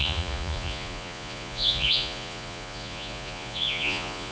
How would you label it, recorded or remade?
remade